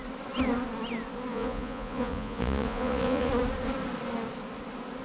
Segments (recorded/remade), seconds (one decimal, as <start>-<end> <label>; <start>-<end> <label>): 0.0-1.3 recorded; 1.3-3.3 remade; 3.3-5.0 recorded